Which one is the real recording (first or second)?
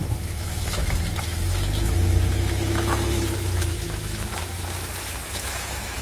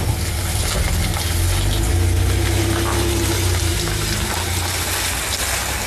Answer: second